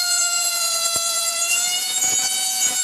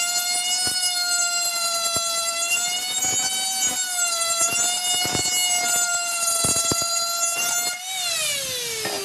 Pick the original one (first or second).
second